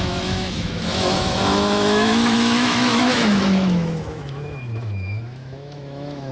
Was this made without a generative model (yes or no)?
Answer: no